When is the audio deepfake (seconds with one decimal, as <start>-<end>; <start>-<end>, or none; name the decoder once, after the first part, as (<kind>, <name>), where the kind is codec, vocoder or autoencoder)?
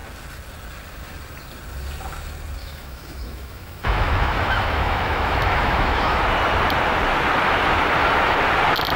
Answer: 2.6-6.2 (autoencoder, DAC-VAE)